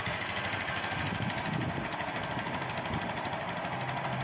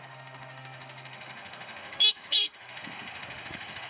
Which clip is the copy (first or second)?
second